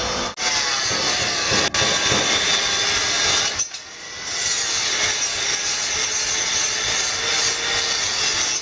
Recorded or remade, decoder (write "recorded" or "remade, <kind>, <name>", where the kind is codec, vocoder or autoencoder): recorded